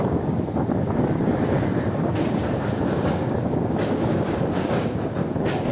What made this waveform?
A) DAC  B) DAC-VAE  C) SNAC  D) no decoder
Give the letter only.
A